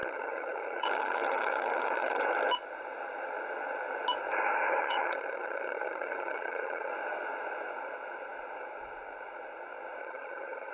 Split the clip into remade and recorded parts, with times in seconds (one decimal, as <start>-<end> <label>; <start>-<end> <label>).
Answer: 0.0-2.2 remade; 2.2-4.7 recorded; 4.7-6.9 remade; 6.9-10.0 recorded; 10.0-10.7 remade

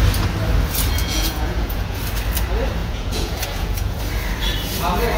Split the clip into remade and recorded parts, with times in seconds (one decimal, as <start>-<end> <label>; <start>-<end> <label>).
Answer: 0.0-1.0 recorded; 1.0-2.0 remade; 2.0-2.8 recorded; 2.8-4.0 remade; 4.0-5.2 recorded

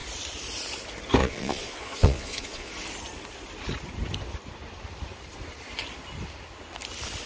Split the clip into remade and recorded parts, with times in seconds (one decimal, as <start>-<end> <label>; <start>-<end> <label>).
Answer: 0.0-1.2 recorded; 1.2-2.7 remade; 2.7-7.3 recorded

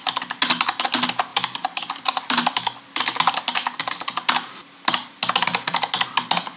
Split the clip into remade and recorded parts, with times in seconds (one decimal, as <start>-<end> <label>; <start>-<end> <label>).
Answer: 0.0-1.3 recorded; 1.3-3.0 remade; 3.0-6.6 recorded

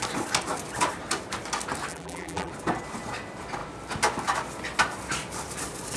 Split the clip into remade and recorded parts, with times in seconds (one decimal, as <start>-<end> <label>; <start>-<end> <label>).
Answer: 0.0-1.9 recorded; 1.9-2.5 remade; 2.5-6.0 recorded

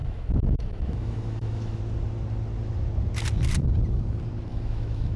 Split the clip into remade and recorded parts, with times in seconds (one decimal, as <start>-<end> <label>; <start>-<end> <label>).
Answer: 0.0-1.8 remade; 1.8-4.5 recorded; 4.5-5.2 remade

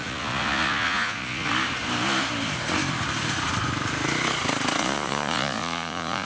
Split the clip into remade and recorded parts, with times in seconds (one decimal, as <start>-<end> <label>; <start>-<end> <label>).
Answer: 0.0-1.5 remade; 1.5-4.8 recorded; 4.8-6.3 remade